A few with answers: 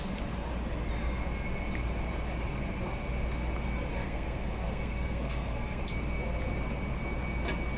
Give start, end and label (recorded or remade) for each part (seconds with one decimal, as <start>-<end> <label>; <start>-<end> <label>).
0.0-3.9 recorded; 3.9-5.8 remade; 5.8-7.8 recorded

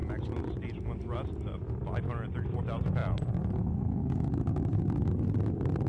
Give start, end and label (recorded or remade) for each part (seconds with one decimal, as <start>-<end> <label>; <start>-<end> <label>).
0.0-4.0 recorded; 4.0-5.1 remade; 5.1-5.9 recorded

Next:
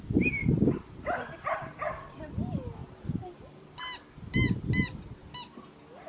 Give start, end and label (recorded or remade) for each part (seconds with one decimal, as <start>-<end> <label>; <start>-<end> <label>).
0.0-0.4 recorded; 0.4-2.3 remade; 2.3-2.8 recorded; 2.8-3.8 remade; 3.8-6.1 recorded

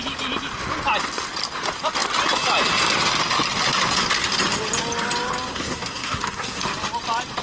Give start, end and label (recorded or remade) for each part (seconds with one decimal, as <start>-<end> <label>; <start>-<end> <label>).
0.0-5.5 recorded; 5.5-6.6 remade; 6.6-7.4 recorded